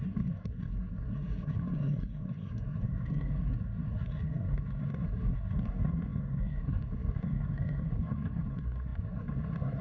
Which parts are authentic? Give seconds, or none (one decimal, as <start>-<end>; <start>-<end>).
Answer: none